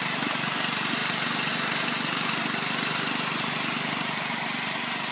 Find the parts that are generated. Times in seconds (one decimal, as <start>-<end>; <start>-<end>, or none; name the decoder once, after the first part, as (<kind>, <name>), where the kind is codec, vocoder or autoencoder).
none